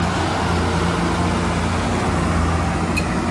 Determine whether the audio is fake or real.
real